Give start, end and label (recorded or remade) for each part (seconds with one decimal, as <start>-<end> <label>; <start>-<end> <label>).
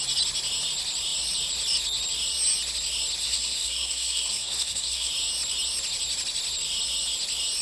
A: 0.0-3.2 recorded; 3.2-5.1 remade; 5.1-7.6 recorded